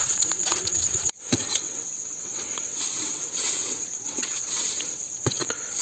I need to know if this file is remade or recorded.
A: remade